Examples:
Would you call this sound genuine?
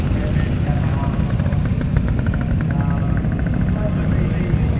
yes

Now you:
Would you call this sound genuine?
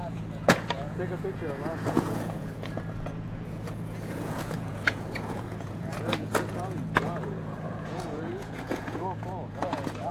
no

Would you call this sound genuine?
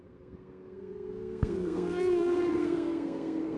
no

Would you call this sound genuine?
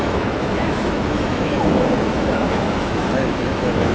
no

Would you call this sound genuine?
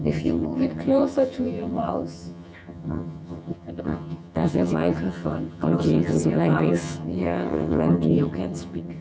no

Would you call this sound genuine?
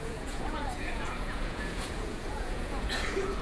no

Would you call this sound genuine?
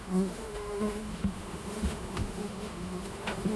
no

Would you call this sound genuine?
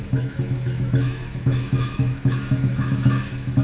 no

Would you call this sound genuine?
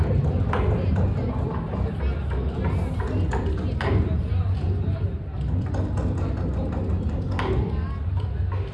yes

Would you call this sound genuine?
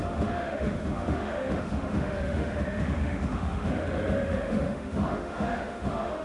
no